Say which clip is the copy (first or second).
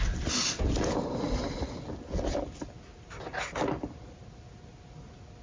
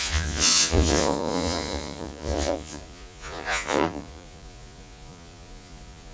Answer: second